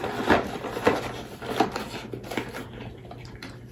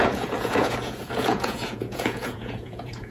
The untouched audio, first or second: first